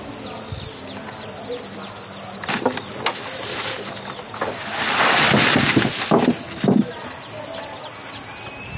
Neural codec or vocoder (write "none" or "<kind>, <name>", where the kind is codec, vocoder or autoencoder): none